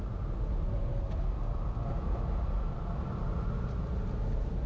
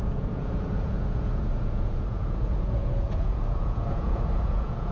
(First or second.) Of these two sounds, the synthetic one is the second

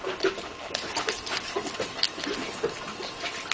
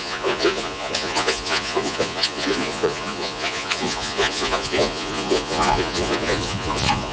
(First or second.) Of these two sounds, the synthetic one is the second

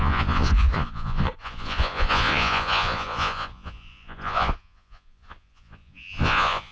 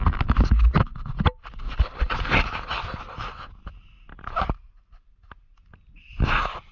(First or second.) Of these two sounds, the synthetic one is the first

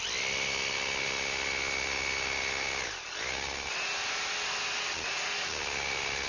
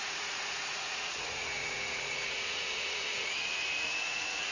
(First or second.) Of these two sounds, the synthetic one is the second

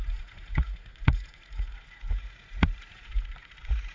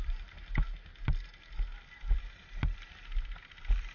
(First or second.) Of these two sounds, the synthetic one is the first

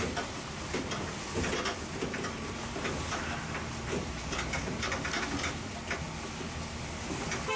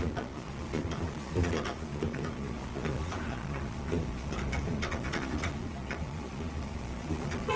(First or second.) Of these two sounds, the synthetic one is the second